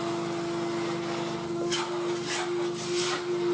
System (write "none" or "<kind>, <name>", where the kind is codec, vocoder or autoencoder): none